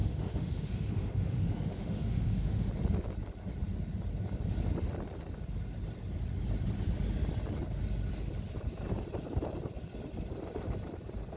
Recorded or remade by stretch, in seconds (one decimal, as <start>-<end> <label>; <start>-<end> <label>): 0.0-2.7 remade; 2.7-11.4 recorded